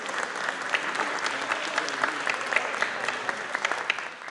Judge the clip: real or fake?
real